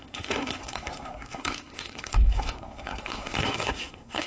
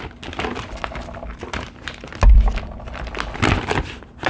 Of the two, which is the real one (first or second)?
second